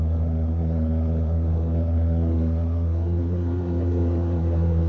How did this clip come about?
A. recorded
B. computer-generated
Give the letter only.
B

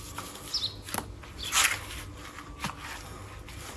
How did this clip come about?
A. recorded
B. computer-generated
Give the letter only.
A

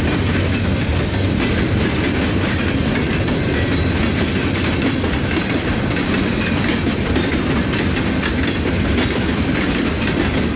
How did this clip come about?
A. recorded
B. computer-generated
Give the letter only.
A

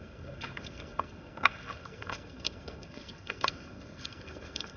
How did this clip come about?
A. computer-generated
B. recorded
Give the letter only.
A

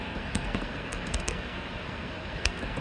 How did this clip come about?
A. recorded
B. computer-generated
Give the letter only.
B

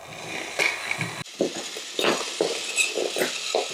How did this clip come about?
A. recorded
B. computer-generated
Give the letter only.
A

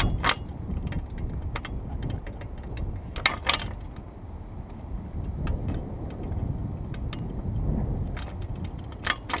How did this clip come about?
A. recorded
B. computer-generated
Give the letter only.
A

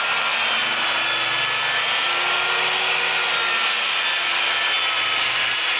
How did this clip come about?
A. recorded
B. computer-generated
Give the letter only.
A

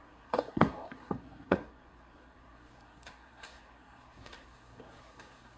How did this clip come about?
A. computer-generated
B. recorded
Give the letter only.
A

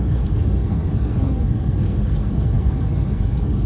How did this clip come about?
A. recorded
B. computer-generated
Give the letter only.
B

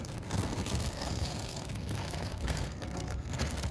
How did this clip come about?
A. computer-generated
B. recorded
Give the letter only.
A